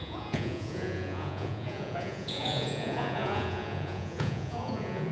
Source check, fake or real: fake